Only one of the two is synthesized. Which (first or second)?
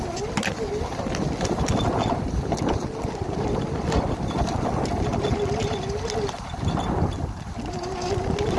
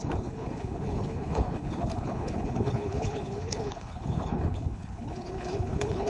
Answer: second